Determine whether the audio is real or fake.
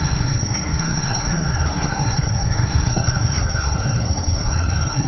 fake